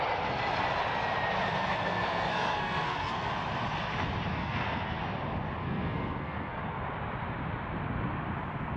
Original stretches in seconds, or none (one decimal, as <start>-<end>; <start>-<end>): 0.0-1.7; 3.3-4.3; 5.0-5.6; 6.6-8.8